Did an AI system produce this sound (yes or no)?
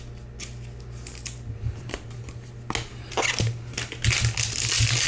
no